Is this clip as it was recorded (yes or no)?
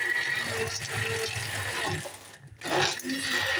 yes